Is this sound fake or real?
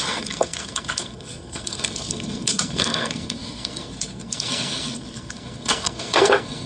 fake